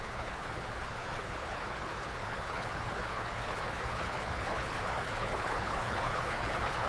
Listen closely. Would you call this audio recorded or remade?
remade